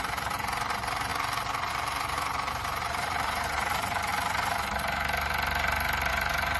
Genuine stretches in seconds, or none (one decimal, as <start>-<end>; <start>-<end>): 1.1-1.7; 4.1-6.1